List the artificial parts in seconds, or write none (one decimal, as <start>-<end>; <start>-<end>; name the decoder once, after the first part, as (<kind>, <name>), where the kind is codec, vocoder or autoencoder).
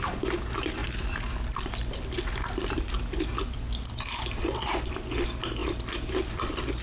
0.0-6.8 (vocoder, BigVGAN v2)